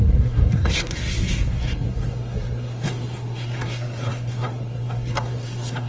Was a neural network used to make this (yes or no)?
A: yes